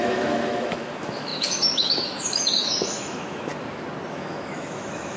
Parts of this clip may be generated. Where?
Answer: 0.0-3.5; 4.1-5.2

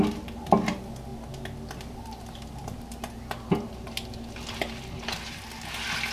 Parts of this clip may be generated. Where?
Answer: none

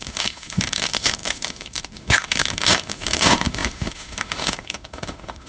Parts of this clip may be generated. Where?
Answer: 0.0-5.5